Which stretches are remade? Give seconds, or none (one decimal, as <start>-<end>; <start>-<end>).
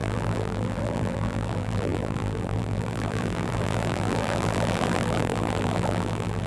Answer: 0.0-6.5